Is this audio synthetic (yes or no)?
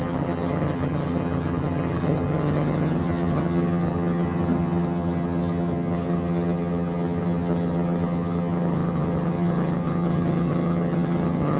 yes